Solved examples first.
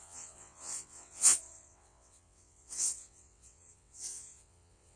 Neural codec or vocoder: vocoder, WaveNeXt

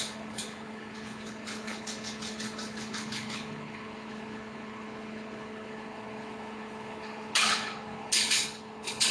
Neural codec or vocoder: codec, HILCodec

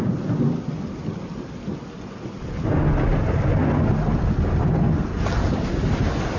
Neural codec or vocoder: none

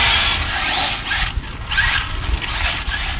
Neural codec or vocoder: none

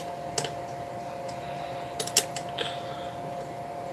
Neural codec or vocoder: none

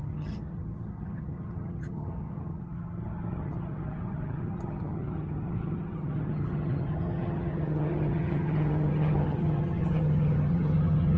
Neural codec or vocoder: vocoder, HiFi-GAN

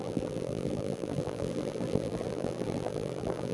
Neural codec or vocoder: vocoder, BigVGAN v2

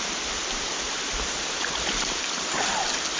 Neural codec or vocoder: none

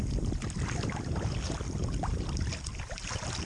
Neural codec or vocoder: none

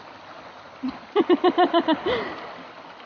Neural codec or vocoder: none